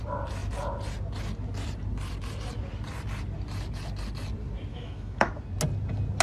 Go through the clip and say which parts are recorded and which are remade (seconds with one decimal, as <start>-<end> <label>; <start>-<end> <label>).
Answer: 0.0-4.7 recorded; 4.7-5.3 remade; 5.3-6.2 recorded